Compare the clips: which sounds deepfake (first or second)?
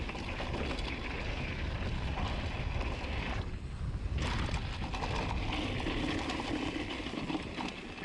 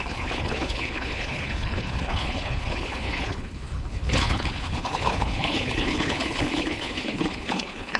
second